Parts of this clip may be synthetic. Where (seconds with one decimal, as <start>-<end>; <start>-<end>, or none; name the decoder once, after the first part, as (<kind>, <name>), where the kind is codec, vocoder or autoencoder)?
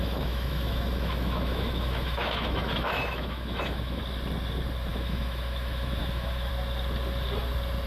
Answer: 0.0-4.0 (autoencoder, DAC-VAE); 4.9-6.5